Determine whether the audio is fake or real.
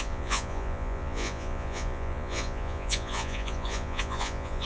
fake